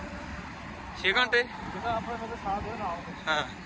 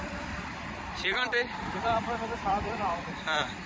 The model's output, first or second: second